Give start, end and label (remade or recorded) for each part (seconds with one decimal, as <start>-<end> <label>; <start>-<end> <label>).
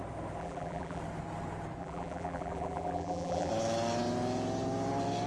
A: 0.0-0.4 recorded; 0.4-1.0 remade; 1.0-1.8 recorded; 1.8-3.5 remade; 3.5-5.3 recorded